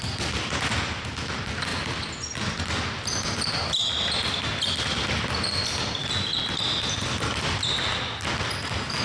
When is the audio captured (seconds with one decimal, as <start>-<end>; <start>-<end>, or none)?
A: 0.0-9.0